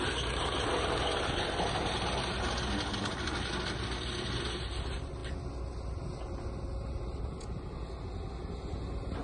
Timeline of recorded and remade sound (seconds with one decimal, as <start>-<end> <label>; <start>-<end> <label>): 0.0-9.2 recorded